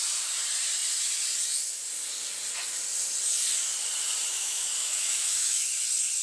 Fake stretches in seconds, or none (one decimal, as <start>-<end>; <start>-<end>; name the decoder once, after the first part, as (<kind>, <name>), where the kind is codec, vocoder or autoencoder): 4.3-5.7 (autoencoder, DAC-VAE)